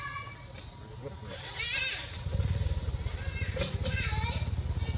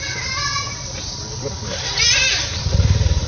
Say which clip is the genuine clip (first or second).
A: first